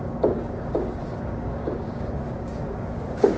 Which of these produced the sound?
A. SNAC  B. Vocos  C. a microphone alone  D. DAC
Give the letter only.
D